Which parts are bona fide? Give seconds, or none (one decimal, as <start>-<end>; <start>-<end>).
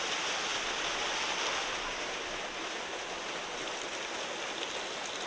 0.0-5.3